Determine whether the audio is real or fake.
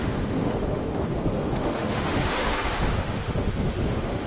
fake